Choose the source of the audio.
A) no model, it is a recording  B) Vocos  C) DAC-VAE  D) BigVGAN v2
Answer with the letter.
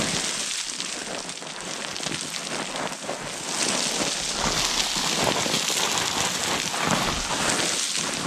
A